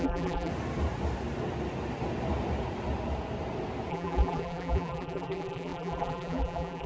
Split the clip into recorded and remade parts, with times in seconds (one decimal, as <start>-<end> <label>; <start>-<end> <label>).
0.0-0.5 remade; 0.5-3.9 recorded; 3.9-6.9 remade